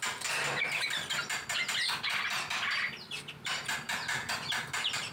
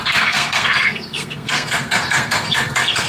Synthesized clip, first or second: second